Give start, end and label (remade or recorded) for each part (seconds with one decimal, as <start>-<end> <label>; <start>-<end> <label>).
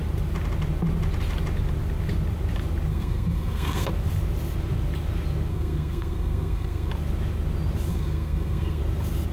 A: 0.0-2.9 recorded; 2.9-3.9 remade; 3.9-5.5 recorded; 5.5-6.9 remade; 6.9-7.9 recorded; 7.9-8.8 remade; 8.8-9.3 recorded